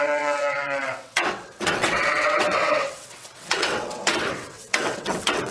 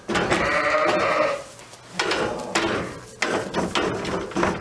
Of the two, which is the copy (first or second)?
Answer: first